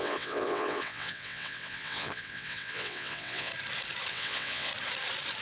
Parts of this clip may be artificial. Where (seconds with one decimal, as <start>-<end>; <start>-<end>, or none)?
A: 0.0-3.5; 4.1-4.7